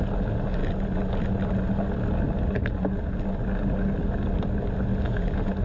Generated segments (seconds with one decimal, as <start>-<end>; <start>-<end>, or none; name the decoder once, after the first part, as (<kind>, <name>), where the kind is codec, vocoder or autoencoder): none